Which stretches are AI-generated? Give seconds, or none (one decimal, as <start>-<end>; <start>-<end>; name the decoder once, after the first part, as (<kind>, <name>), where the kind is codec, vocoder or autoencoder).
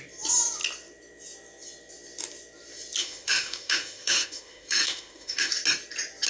3.0-5.5 (autoencoder, DAC-VAE)